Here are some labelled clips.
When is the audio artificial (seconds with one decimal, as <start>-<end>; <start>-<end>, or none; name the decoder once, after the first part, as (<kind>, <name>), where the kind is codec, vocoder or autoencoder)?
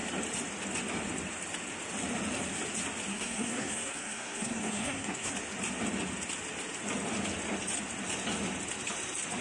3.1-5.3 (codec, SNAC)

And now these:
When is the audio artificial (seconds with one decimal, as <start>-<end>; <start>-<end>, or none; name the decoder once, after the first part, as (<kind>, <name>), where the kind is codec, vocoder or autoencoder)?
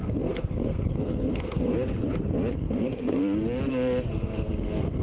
0.0-1.7 (codec, SNAC); 2.5-3.2; 4.1-5.0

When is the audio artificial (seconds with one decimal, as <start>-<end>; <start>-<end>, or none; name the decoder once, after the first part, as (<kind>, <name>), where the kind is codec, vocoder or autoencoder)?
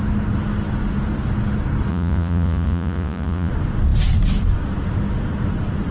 1.9-3.5 (vocoder, Vocos)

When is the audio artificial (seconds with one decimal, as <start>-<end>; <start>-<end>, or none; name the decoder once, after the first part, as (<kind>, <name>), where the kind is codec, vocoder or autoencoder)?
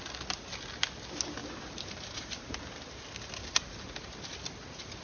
1.4-3.0 (vocoder, BigVGAN v2)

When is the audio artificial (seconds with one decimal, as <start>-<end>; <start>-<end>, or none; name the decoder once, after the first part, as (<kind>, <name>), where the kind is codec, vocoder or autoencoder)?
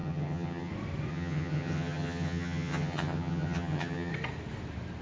0.0-0.7 (vocoder, HiFi-GAN); 1.1-4.1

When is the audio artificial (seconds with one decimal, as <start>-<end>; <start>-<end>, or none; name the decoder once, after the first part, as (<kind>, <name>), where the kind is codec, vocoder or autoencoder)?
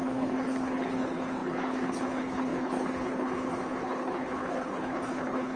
0.0-5.6 (codec, HILCodec)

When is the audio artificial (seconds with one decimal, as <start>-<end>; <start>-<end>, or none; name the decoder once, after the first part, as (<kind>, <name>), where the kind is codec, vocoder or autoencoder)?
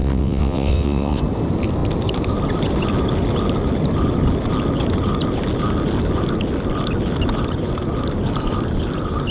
0.0-1.2 (vocoder, WaveNeXt)